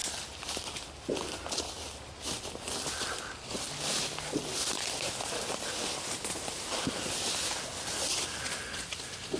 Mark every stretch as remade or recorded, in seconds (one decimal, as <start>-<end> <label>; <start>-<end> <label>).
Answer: 0.0-9.4 recorded